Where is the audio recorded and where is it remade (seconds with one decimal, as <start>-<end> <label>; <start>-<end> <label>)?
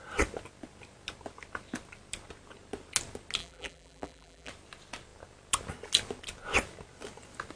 0.0-3.4 recorded; 3.4-4.5 remade; 4.5-7.6 recorded